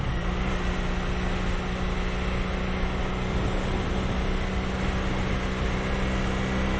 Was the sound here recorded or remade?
recorded